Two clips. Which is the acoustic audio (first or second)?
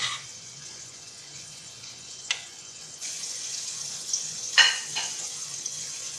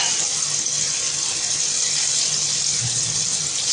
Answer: second